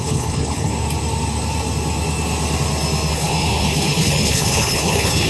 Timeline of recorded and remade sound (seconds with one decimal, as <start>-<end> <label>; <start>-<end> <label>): 0.0-0.7 remade; 0.7-3.1 recorded; 3.1-5.3 remade